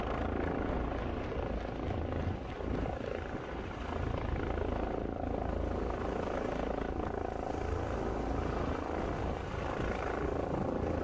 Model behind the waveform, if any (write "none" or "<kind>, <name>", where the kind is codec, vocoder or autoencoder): none